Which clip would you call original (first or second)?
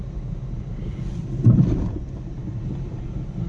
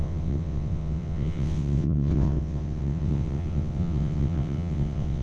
first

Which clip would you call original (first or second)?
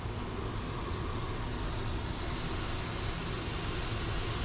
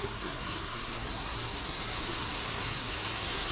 first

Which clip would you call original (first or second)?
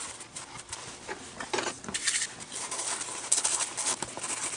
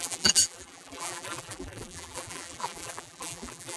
first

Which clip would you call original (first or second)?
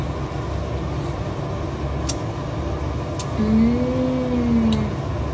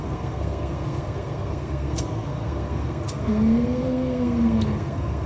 first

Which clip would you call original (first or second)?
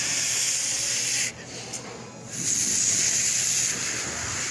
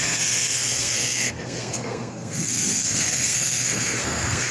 first